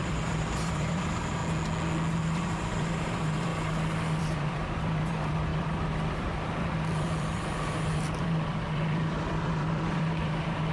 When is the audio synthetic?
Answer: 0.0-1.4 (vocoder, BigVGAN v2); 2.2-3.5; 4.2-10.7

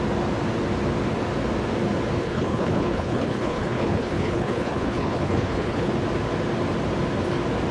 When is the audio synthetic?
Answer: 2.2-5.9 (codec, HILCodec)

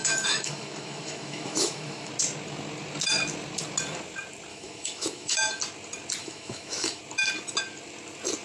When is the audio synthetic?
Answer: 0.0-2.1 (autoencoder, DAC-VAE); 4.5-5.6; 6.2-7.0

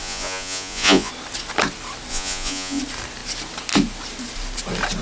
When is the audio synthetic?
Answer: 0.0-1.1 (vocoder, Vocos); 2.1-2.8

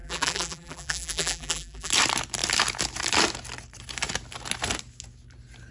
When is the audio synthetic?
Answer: 0.0-1.9 (vocoder, BigVGAN v2)